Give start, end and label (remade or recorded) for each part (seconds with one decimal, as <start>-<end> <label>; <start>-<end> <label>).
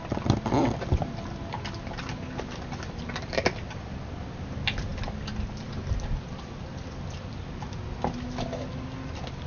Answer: 0.0-9.5 recorded